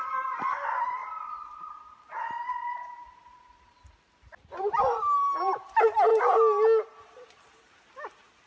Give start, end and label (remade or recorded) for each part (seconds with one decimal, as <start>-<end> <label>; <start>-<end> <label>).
0.0-8.5 recorded

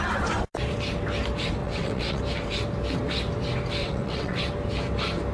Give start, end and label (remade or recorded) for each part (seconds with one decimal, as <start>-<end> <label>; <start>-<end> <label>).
0.0-1.6 recorded; 1.6-2.2 remade; 2.2-3.8 recorded; 3.8-4.4 remade; 4.4-5.3 recorded